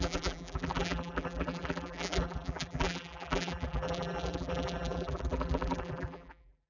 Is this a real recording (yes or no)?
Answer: no